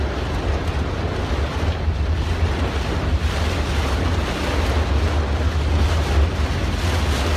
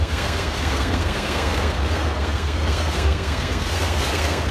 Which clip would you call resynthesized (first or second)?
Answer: second